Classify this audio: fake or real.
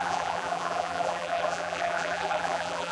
fake